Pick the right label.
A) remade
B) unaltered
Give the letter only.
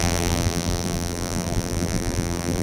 A